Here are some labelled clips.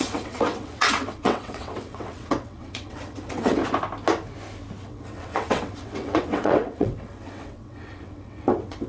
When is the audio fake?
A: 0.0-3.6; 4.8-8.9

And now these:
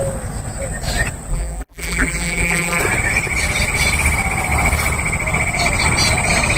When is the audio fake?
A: 1.3-2.8

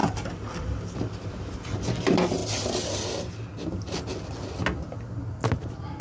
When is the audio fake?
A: none

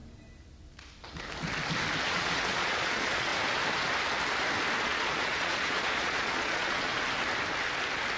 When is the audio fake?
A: 2.0-3.3; 4.8-6.9

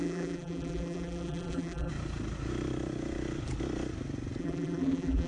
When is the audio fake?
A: 0.0-1.9; 4.4-5.3

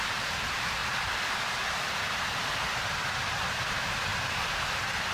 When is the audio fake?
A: 0.0-0.8; 3.6-4.1